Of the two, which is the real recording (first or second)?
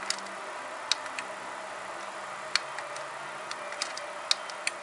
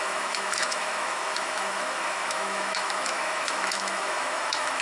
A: first